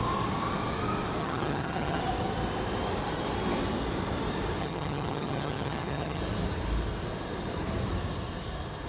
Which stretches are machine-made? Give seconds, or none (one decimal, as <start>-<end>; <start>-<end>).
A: 1.2-2.0; 4.6-6.2